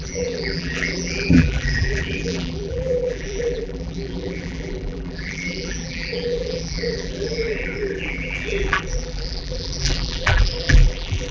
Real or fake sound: fake